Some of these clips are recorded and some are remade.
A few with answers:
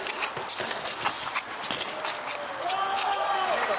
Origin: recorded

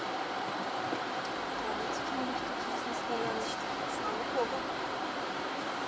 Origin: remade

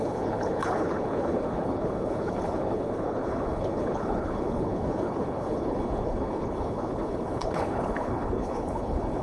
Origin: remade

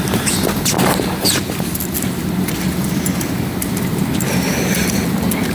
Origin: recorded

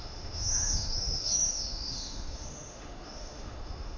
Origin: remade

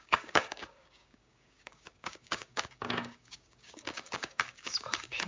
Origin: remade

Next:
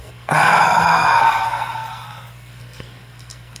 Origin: remade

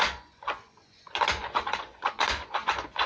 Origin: remade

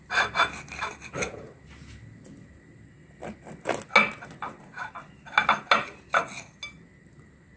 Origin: recorded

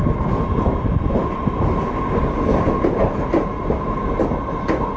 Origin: recorded